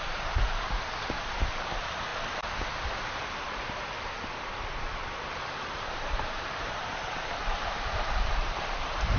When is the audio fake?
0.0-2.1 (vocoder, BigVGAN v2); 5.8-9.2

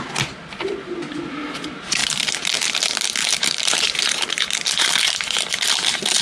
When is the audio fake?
3.2-4.4 (vocoder, BigVGAN v2)

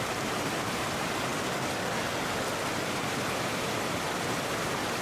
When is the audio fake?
0.0-1.3 (vocoder, BigVGAN v2); 4.3-5.0

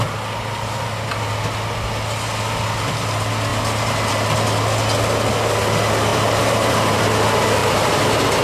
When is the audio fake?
3.5-4.1 (vocoder, BigVGAN v2); 6.1-7.0; 7.6-8.4

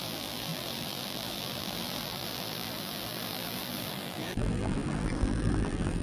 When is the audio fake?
0.0-6.0 (vocoder, BigVGAN v2)

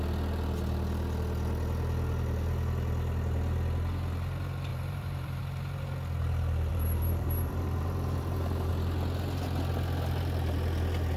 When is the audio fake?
4.7-5.4 (vocoder, BigVGAN v2); 6.7-8.7

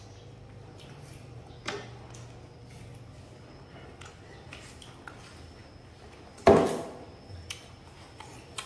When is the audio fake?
none